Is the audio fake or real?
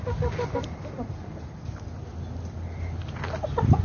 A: real